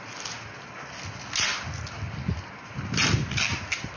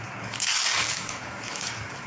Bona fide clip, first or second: first